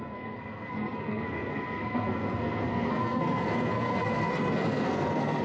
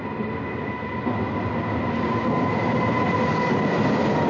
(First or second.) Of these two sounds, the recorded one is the second